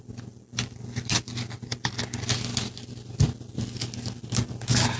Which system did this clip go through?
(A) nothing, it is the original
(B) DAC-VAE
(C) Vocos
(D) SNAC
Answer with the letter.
A